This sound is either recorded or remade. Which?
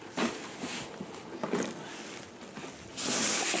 recorded